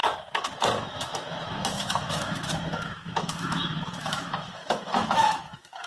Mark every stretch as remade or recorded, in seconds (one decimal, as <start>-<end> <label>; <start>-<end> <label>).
0.0-0.8 recorded; 0.8-5.9 remade

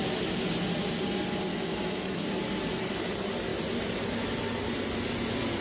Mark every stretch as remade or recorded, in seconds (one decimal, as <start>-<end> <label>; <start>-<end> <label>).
0.0-1.5 recorded; 1.5-2.2 remade; 2.2-5.6 recorded